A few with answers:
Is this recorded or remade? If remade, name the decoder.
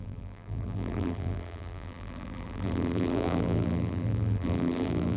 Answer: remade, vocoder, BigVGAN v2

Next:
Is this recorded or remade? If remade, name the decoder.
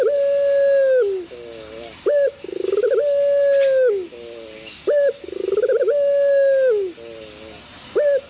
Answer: recorded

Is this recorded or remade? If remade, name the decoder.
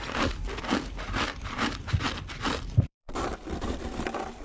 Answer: remade, vocoder, BigVGAN v2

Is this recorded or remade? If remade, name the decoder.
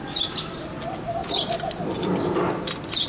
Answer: remade, vocoder, BigVGAN v2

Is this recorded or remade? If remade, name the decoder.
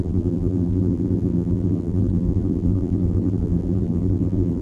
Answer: remade, vocoder, BigVGAN v2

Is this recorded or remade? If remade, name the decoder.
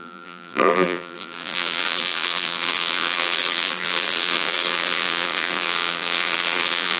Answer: remade, vocoder, BigVGAN v2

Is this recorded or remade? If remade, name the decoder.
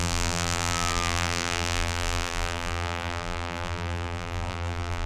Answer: remade, vocoder, BigVGAN v2